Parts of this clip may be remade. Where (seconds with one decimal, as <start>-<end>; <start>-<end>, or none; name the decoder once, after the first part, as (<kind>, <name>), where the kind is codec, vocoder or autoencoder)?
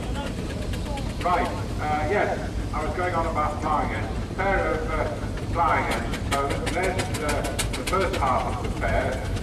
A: 0.0-1.4 (vocoder, BigVGAN v2); 2.7-9.4